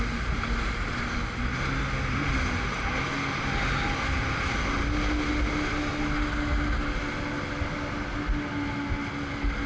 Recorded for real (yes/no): yes